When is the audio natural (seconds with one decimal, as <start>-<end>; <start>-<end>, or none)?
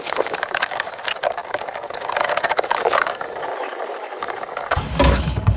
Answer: 3.5-4.2